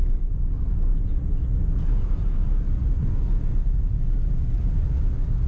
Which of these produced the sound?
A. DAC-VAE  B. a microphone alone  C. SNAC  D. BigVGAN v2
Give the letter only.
B